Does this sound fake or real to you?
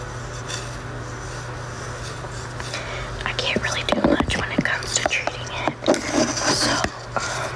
real